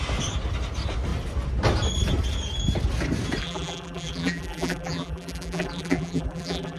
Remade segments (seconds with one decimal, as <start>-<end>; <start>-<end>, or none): 3.4-6.8

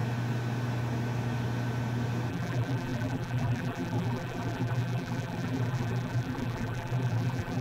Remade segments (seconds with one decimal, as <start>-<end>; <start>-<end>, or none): 2.3-7.6

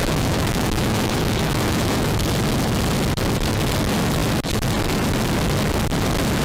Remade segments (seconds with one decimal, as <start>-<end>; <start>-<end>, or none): 0.0-2.1

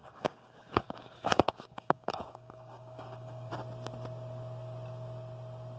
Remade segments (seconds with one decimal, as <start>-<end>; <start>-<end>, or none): 0.0-3.5

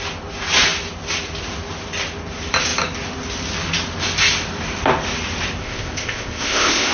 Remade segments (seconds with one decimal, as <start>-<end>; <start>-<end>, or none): 5.6-6.9

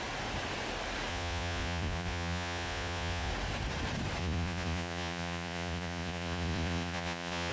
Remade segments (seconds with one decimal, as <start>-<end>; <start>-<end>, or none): 1.1-3.3; 4.2-7.5

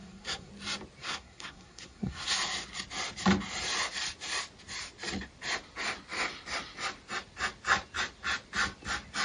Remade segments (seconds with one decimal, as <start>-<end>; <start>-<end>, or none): 0.0-0.5; 1.0-2.3

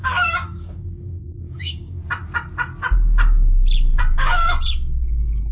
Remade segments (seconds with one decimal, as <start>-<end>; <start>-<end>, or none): 0.0-2.0; 4.0-5.5